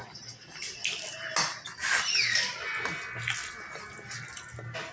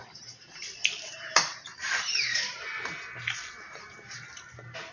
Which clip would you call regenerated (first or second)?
second